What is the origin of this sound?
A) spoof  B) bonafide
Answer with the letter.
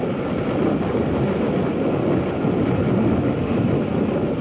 B